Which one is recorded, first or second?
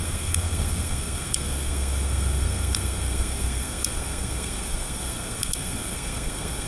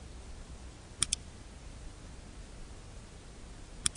second